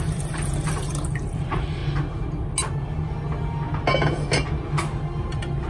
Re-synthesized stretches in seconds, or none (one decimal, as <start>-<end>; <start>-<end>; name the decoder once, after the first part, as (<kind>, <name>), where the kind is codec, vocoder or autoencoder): 0.0-1.8 (vocoder, BigVGAN v2); 5.2-5.7